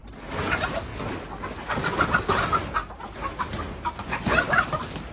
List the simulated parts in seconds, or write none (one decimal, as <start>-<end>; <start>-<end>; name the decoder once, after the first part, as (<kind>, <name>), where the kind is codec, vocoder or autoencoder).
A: 0.0-0.9 (vocoder, BigVGAN v2); 4.0-5.1